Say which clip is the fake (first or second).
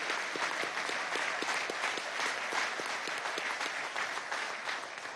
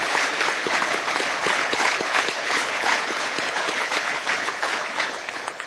second